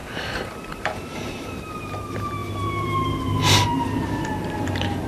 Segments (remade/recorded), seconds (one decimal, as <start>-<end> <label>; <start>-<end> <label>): 0.0-5.1 remade

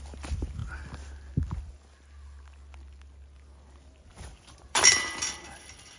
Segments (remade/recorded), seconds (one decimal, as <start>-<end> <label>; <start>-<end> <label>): 0.0-4.1 recorded; 4.1-4.8 remade; 4.8-6.0 recorded

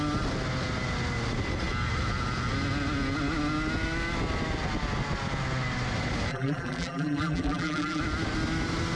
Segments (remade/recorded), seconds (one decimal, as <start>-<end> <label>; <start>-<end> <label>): 0.0-6.3 recorded; 6.3-8.0 remade; 8.0-9.0 recorded

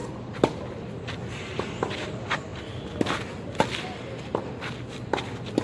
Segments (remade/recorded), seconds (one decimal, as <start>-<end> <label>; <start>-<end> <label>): 0.0-5.6 recorded

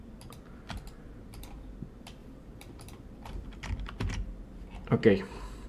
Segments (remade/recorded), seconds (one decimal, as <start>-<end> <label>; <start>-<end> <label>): 0.0-2.2 recorded; 2.2-3.7 remade; 3.7-5.7 recorded

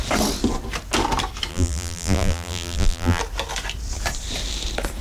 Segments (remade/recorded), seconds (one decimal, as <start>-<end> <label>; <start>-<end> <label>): 0.0-1.5 recorded; 1.5-3.2 remade; 3.2-5.0 recorded

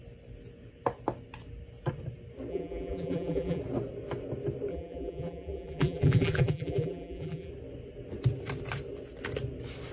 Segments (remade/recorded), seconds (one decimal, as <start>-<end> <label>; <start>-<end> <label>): 0.0-2.5 recorded; 2.5-3.6 remade; 3.6-4.7 recorded; 4.7-7.5 remade; 7.5-9.9 recorded